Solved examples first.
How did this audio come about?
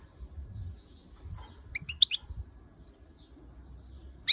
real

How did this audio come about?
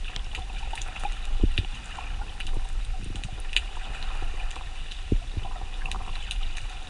real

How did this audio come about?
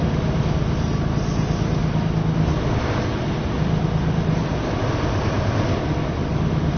real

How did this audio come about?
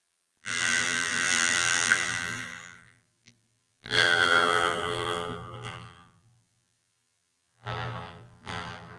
fake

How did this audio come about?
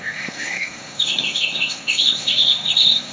fake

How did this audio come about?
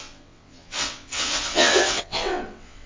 fake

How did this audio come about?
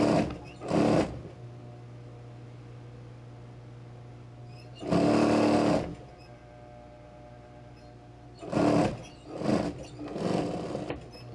real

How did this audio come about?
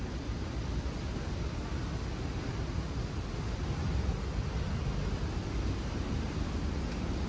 real